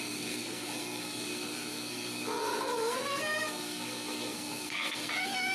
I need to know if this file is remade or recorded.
remade